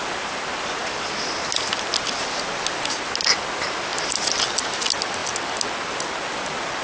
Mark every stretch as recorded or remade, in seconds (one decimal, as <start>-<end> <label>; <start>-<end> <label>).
0.0-6.8 recorded